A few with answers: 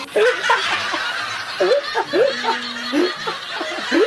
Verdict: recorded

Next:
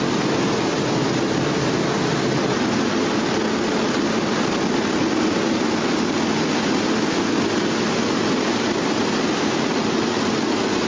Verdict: recorded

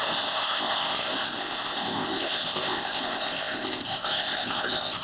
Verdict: remade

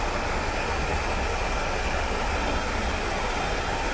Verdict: recorded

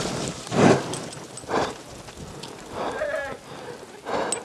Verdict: recorded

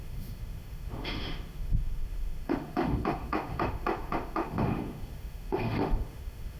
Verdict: remade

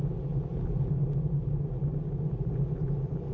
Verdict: recorded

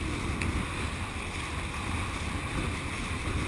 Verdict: recorded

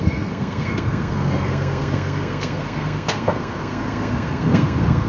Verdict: remade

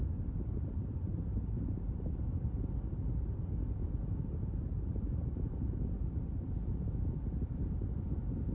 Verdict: recorded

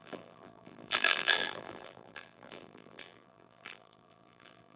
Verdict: remade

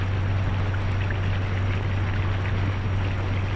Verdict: recorded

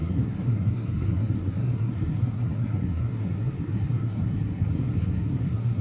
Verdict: remade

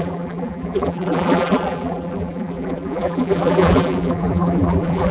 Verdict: remade